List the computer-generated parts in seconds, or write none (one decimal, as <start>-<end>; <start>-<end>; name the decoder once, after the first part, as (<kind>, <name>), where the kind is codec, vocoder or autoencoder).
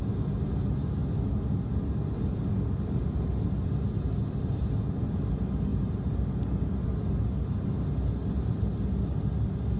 none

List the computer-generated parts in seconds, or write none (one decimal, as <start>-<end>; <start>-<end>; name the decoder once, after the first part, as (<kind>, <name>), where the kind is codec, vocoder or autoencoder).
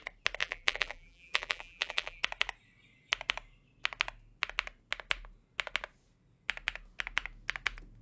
0.4-2.2 (vocoder, BigVGAN v2)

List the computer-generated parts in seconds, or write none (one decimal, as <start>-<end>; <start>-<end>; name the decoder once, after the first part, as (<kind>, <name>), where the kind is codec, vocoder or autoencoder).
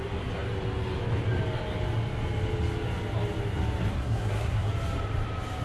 3.9-4.7 (codec, SNAC)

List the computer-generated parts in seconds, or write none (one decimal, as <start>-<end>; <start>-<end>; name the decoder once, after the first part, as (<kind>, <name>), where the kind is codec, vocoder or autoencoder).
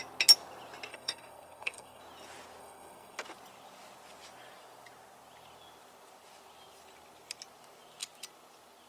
0.9-2.0 (codec, SNAC); 2.6-3.2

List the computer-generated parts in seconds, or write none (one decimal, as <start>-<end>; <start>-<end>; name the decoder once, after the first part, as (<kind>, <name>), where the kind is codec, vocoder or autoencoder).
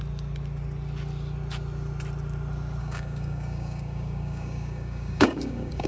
2.8-5.9 (codec, DAC)